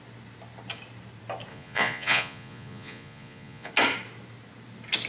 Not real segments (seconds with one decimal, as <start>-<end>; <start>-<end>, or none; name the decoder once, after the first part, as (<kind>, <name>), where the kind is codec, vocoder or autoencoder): 1.5-3.7 (vocoder, Vocos)